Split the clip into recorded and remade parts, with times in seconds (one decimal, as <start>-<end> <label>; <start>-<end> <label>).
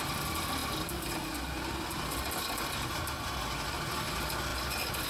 0.0-5.1 recorded